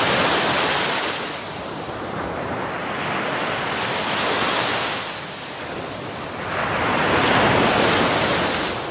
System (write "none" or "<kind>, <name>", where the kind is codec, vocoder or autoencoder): none